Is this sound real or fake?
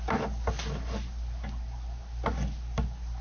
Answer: real